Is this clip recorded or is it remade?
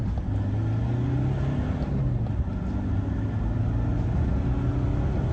recorded